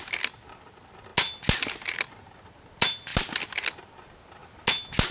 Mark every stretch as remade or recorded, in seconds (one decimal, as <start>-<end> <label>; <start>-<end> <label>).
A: 0.0-5.1 recorded

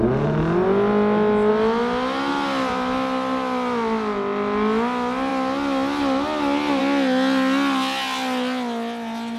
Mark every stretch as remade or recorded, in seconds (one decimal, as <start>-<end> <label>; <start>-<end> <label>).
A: 0.0-9.4 recorded

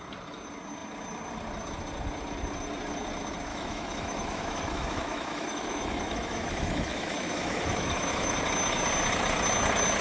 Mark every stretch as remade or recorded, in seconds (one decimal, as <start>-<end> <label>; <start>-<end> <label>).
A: 0.0-3.5 recorded; 3.5-8.4 remade; 8.4-10.0 recorded

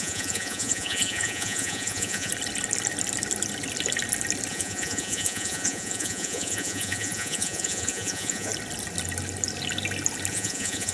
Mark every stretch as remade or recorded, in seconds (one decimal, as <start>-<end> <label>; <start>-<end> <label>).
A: 0.0-2.3 remade; 2.3-4.5 recorded; 4.5-8.5 remade; 8.5-10.3 recorded; 10.3-10.9 remade

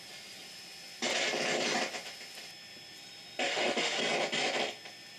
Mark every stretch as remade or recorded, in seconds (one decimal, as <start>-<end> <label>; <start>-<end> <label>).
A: 0.0-3.4 recorded; 3.4-4.0 remade; 4.0-5.2 recorded